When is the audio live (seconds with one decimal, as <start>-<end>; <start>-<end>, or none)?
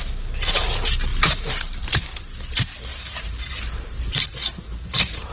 0.0-1.1; 2.0-2.9; 3.6-5.3